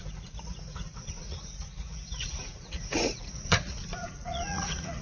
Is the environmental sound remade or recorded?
remade